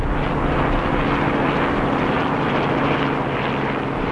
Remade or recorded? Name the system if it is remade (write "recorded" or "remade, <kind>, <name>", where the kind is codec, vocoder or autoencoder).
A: recorded